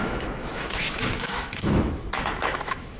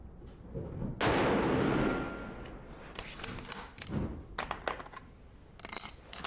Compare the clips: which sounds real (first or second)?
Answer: second